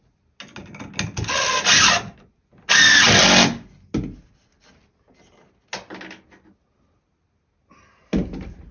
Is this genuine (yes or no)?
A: yes